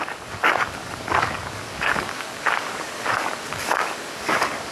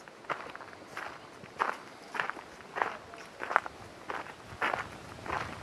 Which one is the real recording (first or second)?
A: second